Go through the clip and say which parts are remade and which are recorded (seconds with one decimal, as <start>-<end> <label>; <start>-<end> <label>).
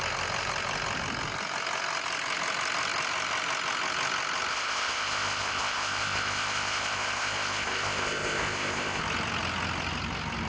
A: 0.0-4.5 recorded; 4.5-9.0 remade; 9.0-10.5 recorded